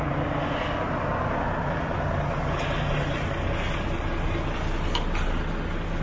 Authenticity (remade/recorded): recorded